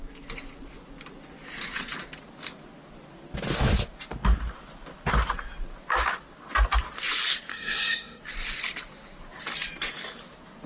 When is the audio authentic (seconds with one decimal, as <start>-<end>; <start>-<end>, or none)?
0.0-7.5; 8.2-10.7